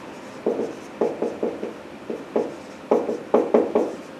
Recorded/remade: recorded